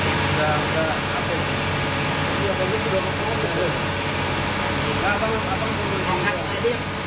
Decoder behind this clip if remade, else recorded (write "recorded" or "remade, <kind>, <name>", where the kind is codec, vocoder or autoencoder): recorded